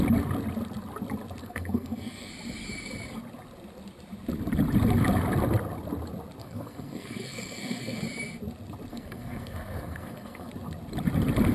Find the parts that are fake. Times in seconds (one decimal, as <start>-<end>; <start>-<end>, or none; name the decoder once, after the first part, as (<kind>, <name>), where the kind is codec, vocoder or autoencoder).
1.4-2.3 (codec, SNAC); 6.4-8.0; 8.9-10.5